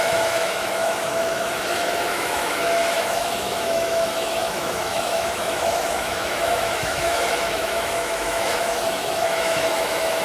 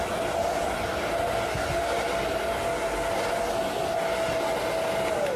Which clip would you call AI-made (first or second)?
first